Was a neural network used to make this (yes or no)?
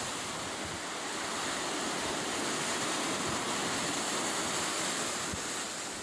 no